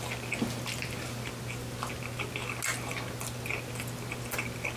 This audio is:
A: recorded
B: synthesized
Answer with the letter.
A